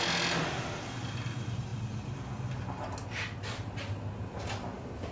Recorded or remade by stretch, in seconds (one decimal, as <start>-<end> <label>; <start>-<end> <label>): 0.0-5.1 recorded